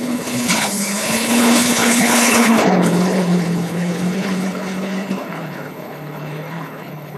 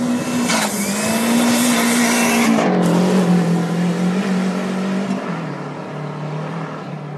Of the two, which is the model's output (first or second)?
first